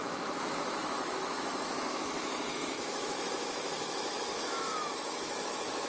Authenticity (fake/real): fake